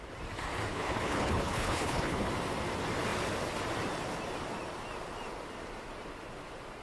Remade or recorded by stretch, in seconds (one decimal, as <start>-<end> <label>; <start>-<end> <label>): 0.0-0.7 recorded; 0.7-2.3 remade; 2.3-6.8 recorded